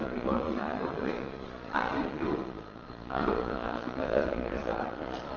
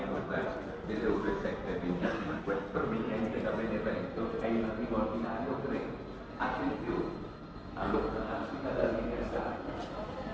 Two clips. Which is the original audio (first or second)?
second